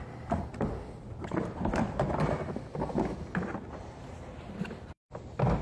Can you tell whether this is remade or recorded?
recorded